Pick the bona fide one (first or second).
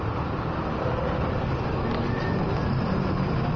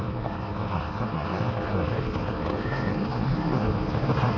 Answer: first